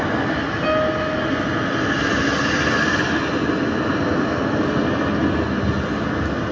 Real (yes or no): yes